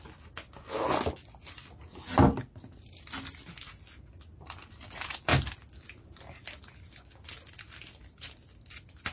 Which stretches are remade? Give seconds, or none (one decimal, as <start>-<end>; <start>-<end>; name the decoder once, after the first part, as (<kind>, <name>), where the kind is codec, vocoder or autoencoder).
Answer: none